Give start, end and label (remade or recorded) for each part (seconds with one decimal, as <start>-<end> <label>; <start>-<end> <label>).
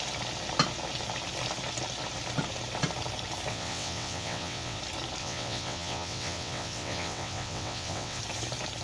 0.0-3.5 recorded; 3.5-4.8 remade; 4.8-5.2 recorded; 5.2-8.2 remade; 8.2-8.8 recorded